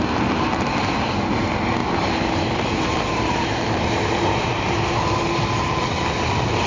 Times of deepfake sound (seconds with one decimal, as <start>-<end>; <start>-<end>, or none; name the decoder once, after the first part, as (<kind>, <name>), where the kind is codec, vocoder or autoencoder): 1.8-5.8 (vocoder, BigVGAN v2)